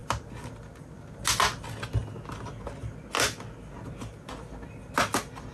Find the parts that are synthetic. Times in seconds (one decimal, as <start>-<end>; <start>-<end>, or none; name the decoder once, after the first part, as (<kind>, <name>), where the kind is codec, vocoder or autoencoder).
none